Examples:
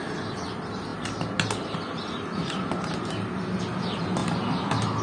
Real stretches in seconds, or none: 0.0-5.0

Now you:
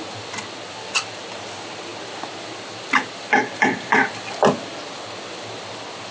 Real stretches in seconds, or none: 0.0-6.1

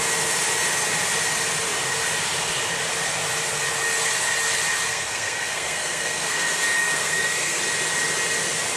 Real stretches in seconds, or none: 0.0-4.9; 7.6-8.8

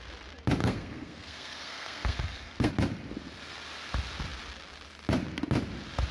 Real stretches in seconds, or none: 0.0-0.6; 2.7-6.1

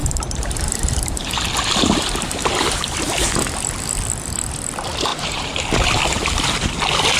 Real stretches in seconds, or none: 0.0-5.1; 5.6-7.2

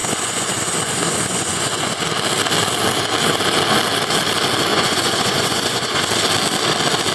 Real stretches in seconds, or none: 2.0-4.7; 6.0-7.1

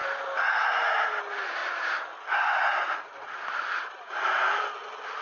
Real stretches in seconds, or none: 0.0-5.2

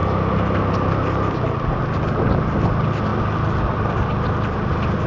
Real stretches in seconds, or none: 0.0-5.1